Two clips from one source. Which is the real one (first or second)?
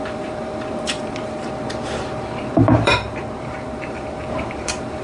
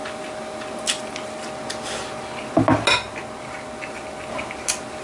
second